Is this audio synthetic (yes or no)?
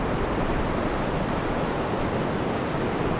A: no